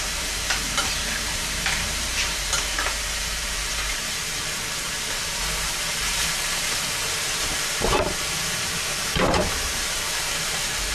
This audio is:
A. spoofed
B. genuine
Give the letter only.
A